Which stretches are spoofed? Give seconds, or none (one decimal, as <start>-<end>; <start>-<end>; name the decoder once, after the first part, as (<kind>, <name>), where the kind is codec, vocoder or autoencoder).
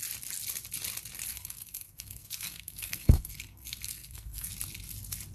1.3-4.5 (codec, SNAC)